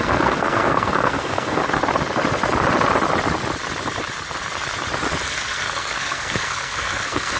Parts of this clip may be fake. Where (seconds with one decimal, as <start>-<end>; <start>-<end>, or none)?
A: 0.0-1.6; 5.2-7.4